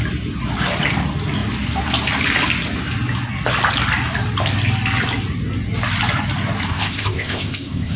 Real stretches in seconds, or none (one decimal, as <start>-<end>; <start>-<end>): 0.0-6.7